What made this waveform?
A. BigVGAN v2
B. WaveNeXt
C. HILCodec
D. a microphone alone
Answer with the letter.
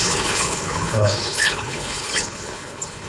C